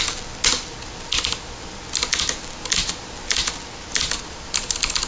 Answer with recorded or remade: recorded